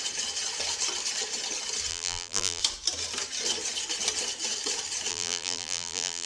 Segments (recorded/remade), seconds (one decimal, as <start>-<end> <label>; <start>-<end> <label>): 0.0-1.9 recorded; 1.9-2.6 remade; 2.6-5.1 recorded; 5.1-6.3 remade